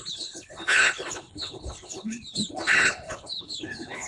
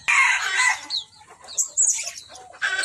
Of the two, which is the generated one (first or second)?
first